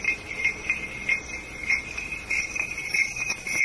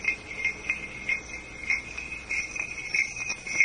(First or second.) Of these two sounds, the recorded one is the second